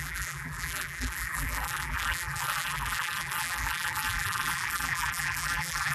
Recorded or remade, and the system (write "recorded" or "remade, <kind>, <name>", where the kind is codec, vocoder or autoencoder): remade, vocoder, BigVGAN v2